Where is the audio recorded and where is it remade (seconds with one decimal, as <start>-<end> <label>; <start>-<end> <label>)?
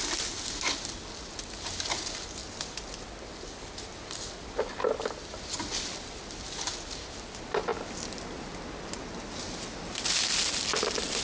0.0-11.2 recorded